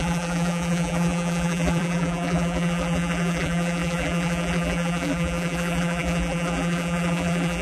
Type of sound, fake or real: fake